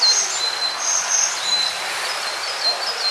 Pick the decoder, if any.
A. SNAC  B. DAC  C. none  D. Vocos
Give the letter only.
C